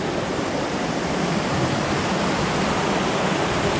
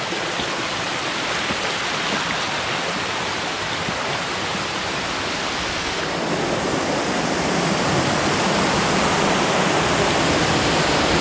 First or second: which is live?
second